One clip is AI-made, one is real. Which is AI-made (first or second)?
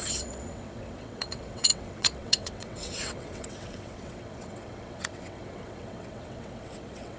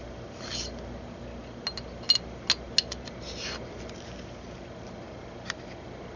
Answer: first